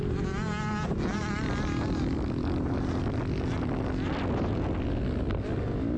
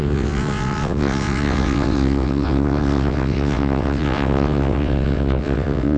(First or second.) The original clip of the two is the first